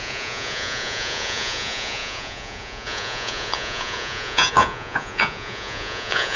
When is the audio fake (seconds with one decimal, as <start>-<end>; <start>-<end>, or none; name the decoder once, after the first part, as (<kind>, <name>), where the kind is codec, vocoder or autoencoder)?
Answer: 0.0-6.4 (vocoder, Vocos)